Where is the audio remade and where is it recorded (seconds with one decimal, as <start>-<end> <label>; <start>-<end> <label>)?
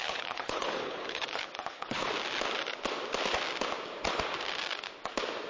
0.0-2.1 remade; 2.1-5.5 recorded